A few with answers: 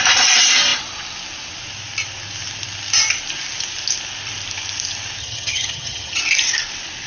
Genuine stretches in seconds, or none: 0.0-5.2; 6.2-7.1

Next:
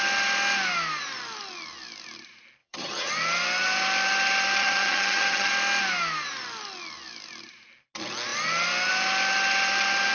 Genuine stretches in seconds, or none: 0.0-2.6; 3.1-4.6; 5.5-10.1

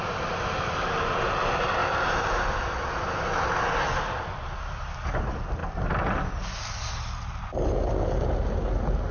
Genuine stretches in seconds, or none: 0.0-9.1

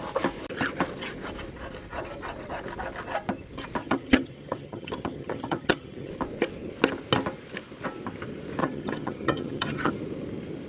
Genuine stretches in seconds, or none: 0.0-3.8; 6.1-8.6; 9.9-10.7